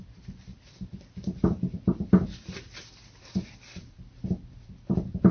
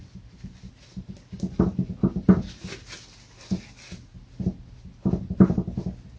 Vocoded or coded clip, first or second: first